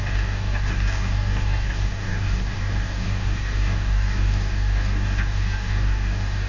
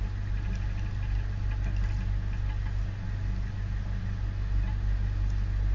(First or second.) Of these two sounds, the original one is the second